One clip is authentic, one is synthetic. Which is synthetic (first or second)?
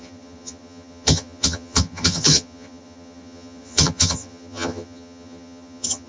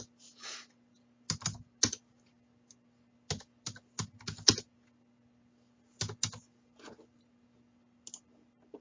first